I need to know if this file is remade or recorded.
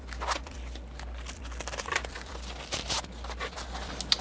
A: recorded